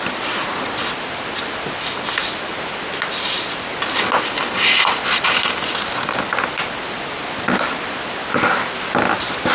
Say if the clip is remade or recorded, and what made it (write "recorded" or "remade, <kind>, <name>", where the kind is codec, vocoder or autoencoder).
recorded